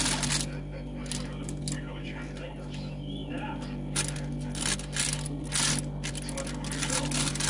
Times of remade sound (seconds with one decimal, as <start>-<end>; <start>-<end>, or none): none